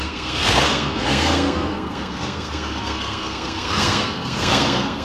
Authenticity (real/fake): fake